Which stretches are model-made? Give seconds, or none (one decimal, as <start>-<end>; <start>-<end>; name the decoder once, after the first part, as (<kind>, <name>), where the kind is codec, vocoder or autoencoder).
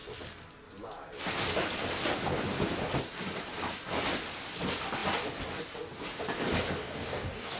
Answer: 6.8-7.6 (codec, DAC)